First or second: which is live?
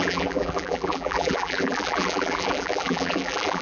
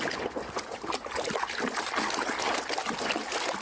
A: second